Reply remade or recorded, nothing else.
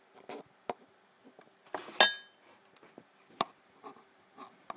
recorded